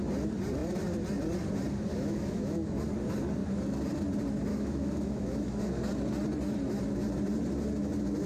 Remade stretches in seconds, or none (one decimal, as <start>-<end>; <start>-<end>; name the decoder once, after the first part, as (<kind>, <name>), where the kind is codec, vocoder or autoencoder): 1.9-2.8 (autoencoder, DAC-VAE); 4.5-5.6